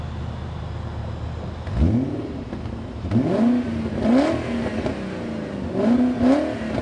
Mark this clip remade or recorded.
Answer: recorded